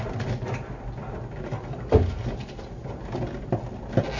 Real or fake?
real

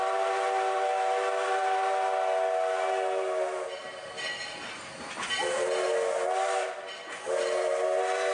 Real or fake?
real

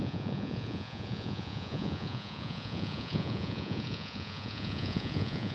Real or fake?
fake